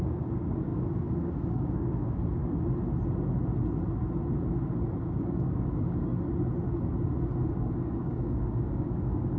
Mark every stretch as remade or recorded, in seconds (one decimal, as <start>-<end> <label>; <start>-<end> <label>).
0.0-2.4 remade; 2.4-5.0 recorded; 5.0-6.1 remade; 6.1-7.5 recorded; 7.5-9.4 remade